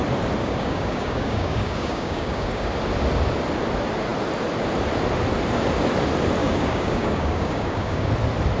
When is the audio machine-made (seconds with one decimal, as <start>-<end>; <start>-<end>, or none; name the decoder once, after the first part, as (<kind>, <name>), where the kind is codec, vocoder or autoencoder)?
0.4-2.7 (codec, DAC); 6.4-8.1